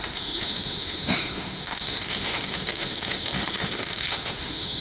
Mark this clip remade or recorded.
remade